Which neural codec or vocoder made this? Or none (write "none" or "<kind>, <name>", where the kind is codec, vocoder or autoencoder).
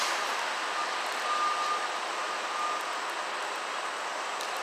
none